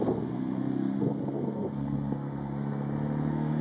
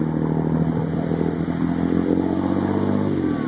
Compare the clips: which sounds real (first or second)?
second